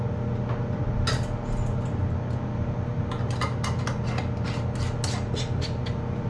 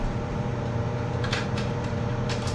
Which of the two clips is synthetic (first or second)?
second